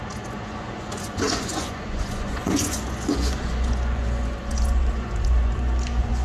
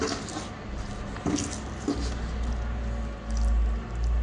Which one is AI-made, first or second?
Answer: first